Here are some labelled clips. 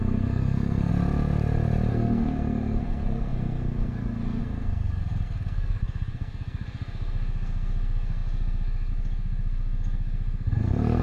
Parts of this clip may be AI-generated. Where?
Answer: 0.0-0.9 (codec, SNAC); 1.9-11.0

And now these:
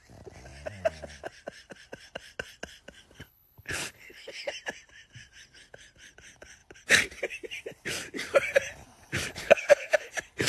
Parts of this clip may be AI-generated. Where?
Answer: 3.2-4.5 (codec, HILCodec); 9.3-10.1